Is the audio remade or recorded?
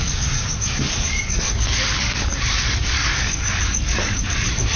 remade